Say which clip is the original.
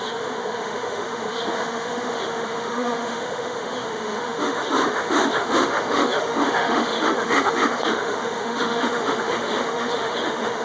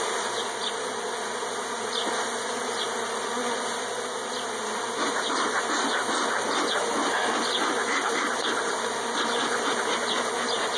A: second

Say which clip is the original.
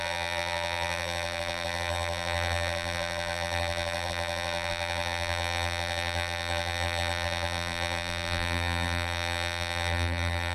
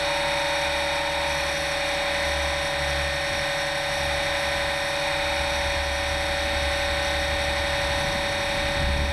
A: second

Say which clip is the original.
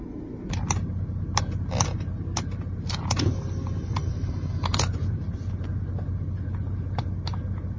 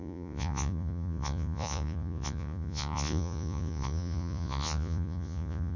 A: first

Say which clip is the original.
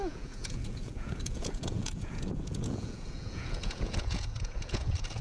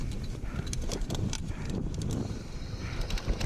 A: second